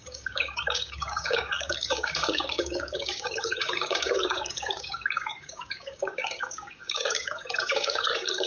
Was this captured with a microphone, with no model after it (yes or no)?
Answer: no